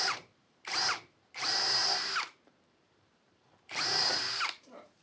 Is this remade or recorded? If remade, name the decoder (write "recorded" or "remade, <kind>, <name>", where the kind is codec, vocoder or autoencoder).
remade, vocoder, BigVGAN v2